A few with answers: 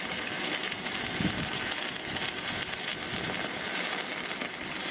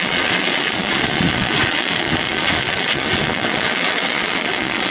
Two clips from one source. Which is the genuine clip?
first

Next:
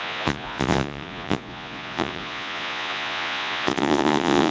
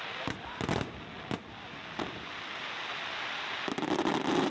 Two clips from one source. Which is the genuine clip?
second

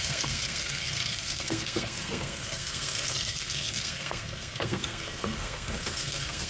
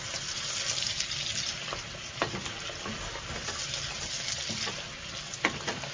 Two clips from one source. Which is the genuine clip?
second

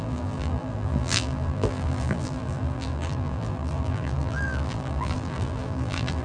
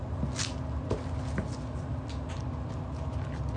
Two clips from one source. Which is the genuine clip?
second